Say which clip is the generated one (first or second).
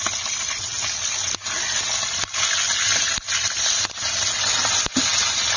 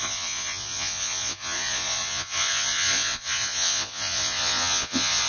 second